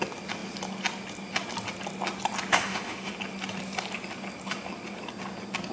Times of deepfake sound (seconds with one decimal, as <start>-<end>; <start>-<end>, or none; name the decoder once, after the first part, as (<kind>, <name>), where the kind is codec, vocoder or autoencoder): 2.5-3.1 (autoencoder, DAC-VAE)